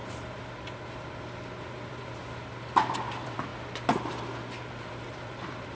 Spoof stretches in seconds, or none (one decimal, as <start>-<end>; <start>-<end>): 1.7-2.2; 2.8-3.5; 4.7-5.7